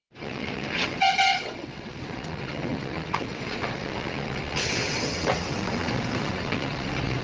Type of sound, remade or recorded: remade